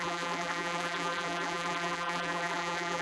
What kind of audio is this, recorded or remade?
remade